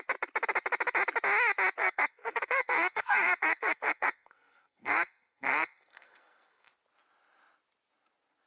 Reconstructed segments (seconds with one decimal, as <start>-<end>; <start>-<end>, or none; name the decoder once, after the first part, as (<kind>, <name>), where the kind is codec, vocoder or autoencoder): 1.8-6.7 (codec, SNAC)